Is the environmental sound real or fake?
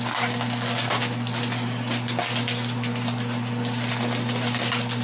real